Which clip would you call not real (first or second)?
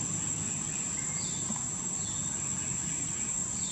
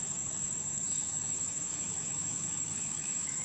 second